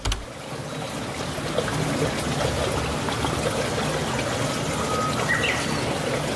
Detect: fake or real real